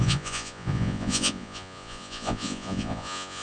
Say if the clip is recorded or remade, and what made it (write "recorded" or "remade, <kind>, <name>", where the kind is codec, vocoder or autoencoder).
remade, vocoder, Vocos